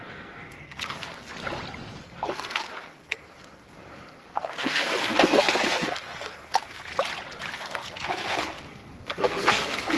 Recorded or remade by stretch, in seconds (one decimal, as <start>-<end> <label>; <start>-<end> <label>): 0.0-1.3 remade; 1.3-2.0 recorded; 2.0-6.9 remade; 6.9-7.5 recorded; 7.5-10.0 remade